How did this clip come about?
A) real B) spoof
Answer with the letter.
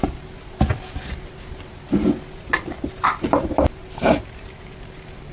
A